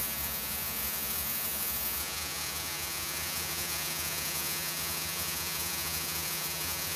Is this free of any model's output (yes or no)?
no